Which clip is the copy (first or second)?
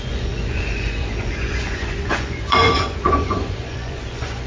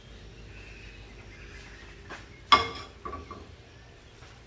first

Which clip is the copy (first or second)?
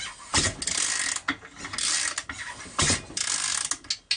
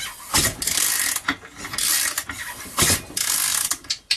second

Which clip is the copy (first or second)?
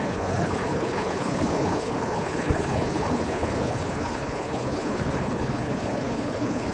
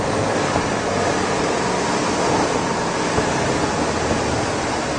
first